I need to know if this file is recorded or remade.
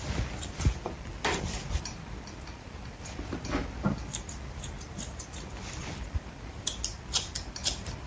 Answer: remade